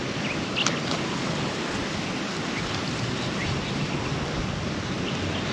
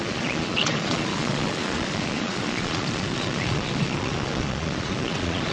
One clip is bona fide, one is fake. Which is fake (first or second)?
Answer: second